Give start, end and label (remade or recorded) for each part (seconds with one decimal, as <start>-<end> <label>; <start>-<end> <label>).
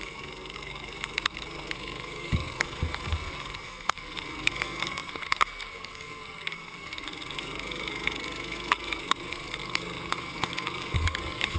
0.0-11.6 remade